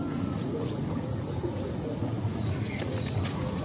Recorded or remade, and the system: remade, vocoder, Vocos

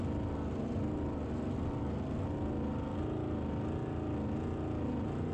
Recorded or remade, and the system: recorded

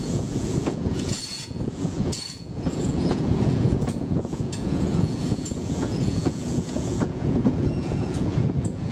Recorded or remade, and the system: remade, vocoder, Vocos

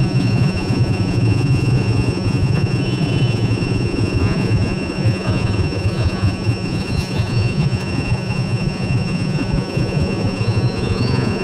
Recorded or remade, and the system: remade, vocoder, Vocos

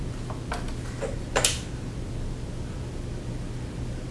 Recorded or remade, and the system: recorded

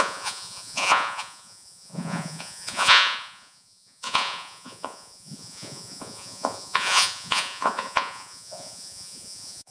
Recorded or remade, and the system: remade, vocoder, Vocos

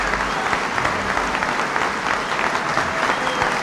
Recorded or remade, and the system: recorded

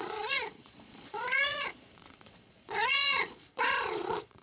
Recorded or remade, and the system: remade, vocoder, Vocos